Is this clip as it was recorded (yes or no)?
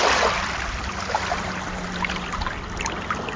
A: yes